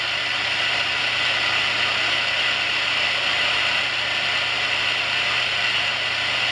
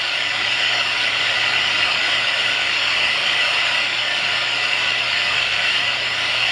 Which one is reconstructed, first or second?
second